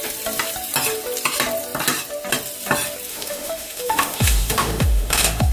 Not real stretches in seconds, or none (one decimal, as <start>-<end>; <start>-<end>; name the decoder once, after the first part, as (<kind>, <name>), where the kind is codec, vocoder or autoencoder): 3.1-5.5 (autoencoder, DAC-VAE)